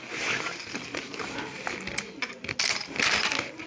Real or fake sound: real